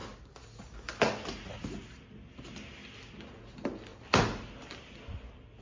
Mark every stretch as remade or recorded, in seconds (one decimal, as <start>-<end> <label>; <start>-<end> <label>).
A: 0.0-5.6 recorded